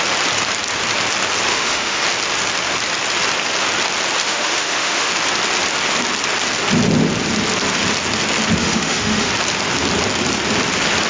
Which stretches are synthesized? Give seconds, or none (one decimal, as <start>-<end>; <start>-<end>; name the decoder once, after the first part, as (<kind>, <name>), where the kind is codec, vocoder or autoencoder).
1.5-2.0 (autoencoder, DAC-VAE); 4.2-5.1; 8.6-9.3